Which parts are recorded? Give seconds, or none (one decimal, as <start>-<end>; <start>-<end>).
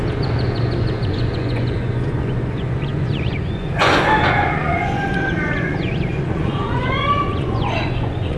none